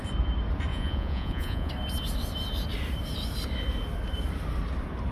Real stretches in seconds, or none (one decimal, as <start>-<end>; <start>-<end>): 0.0-0.7; 1.7-5.1